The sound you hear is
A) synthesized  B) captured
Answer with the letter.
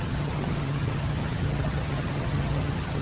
A